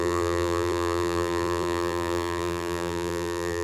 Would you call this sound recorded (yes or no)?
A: no